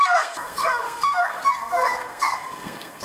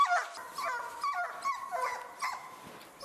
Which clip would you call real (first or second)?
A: second